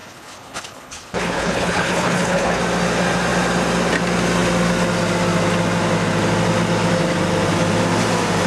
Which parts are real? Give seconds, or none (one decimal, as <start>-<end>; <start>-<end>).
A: 2.6-8.5